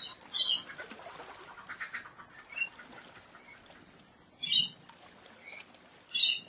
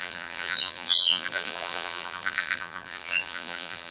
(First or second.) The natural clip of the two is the first